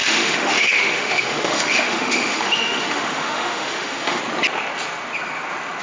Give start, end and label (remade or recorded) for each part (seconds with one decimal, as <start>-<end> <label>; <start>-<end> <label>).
0.0-4.2 remade; 4.2-5.8 recorded